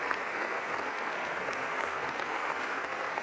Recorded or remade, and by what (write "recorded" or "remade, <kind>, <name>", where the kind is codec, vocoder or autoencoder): remade, codec, SNAC